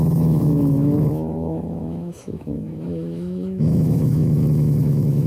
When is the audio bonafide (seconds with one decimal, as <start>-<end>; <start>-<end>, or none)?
none